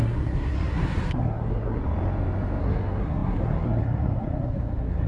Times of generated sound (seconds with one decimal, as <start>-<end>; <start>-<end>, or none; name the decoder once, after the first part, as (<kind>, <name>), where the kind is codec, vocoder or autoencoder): 0.0-1.8 (codec, SNAC); 2.6-5.1